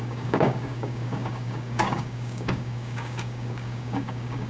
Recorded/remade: remade